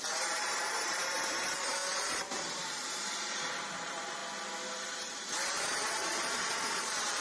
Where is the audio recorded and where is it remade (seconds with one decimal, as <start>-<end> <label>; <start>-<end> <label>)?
0.0-4.2 remade; 4.2-4.9 recorded; 4.9-7.2 remade